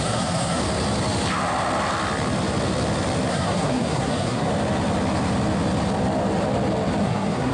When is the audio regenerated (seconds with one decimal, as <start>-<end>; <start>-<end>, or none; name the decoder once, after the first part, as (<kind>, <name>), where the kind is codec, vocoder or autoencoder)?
0.0-0.6 (codec, SNAC); 3.3-4.5; 7.0-7.5